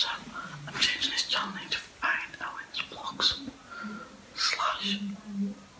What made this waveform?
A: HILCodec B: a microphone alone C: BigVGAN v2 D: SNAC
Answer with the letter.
B